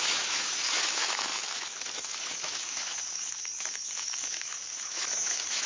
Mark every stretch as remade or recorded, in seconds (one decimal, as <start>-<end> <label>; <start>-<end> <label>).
0.0-5.7 remade